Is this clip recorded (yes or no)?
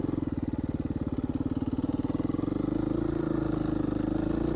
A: yes